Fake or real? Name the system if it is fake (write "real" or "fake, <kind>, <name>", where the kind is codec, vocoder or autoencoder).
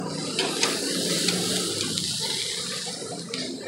real